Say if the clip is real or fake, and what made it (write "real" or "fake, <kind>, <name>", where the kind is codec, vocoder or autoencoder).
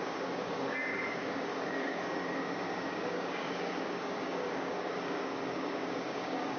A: fake, codec, DAC